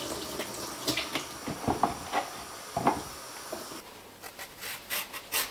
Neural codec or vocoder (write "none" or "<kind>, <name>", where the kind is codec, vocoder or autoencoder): none